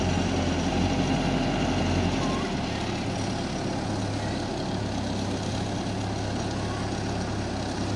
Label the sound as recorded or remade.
recorded